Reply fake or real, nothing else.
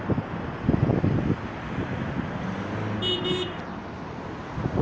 real